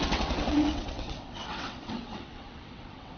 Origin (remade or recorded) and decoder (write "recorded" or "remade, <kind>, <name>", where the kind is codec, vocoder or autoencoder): remade, vocoder, WaveNeXt